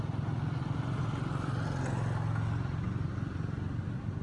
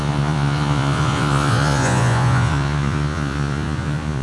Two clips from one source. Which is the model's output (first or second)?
second